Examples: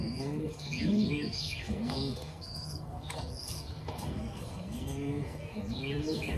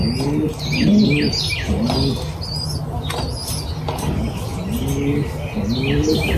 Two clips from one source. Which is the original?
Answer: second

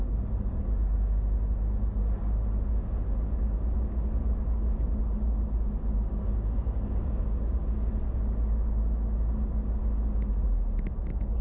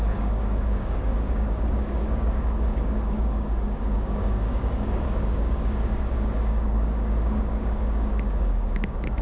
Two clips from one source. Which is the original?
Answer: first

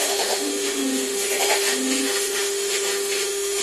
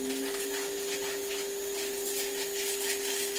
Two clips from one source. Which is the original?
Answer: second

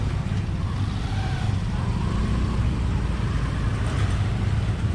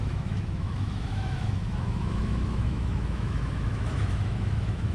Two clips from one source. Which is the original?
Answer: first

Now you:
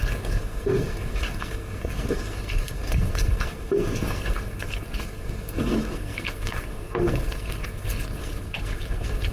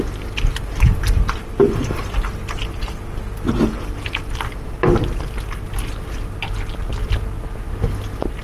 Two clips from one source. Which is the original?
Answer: second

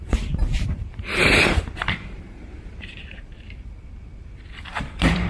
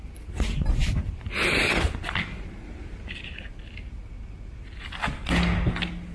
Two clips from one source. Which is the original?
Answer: second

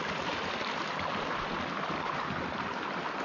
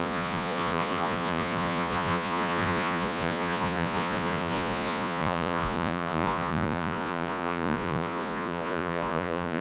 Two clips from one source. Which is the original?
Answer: first